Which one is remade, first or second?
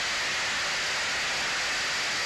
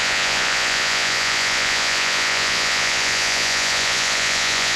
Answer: second